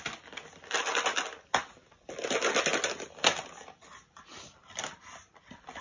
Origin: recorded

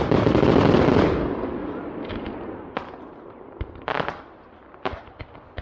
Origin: recorded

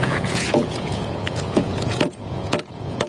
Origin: remade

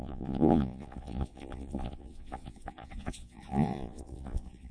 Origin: remade